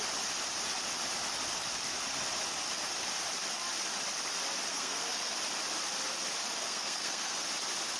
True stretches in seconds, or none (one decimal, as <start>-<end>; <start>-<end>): 0.0-4.7; 5.3-6.6; 7.4-8.0